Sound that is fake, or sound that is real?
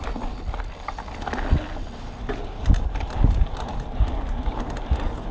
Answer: real